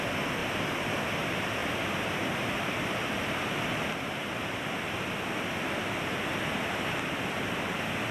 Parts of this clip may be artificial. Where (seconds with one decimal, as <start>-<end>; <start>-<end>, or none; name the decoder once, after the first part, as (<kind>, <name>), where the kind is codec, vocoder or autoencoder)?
none